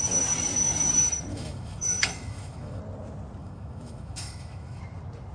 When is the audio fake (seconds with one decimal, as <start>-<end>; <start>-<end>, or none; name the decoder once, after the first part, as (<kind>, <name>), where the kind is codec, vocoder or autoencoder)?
1.3-2.8 (autoencoder, DAC-VAE); 3.4-4.8